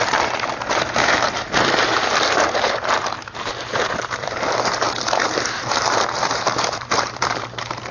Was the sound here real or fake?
fake